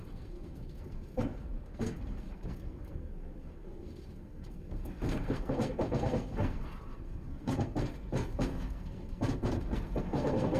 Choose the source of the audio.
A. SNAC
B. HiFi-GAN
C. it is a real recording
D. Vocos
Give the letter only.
A